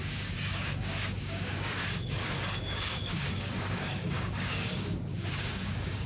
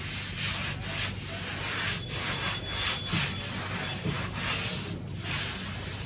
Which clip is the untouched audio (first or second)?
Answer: second